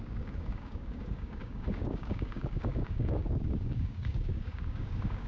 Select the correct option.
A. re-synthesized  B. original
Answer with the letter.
A